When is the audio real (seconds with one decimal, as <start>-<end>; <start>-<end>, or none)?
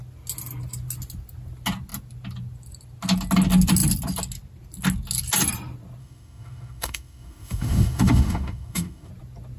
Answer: 0.0-6.0; 9.1-9.6